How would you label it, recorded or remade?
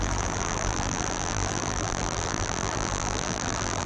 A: remade